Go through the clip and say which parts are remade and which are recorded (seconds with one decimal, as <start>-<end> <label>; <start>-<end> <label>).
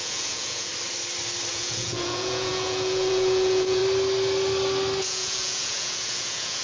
0.0-0.7 remade; 0.7-1.5 recorded; 1.5-3.8 remade; 3.8-5.0 recorded; 5.0-6.6 remade